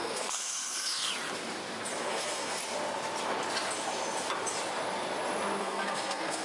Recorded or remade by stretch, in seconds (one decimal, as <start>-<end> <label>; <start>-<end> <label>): 0.0-1.1 remade; 1.1-2.0 recorded; 2.0-2.6 remade; 2.6-5.6 recorded; 5.6-6.4 remade